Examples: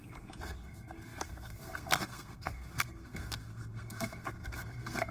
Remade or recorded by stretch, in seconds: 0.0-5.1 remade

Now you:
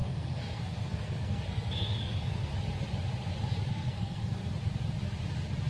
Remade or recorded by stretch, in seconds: 0.0-2.5 remade; 2.5-3.7 recorded; 3.7-4.4 remade; 4.4-5.7 recorded

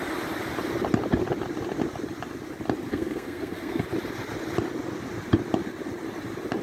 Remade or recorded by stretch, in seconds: 0.0-2.9 recorded; 2.9-3.8 remade; 3.8-6.6 recorded